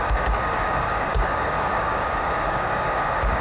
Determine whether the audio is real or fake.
fake